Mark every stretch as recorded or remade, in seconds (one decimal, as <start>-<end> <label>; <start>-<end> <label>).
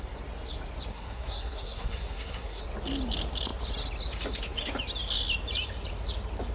0.0-0.9 recorded; 0.9-2.6 remade; 2.6-6.5 recorded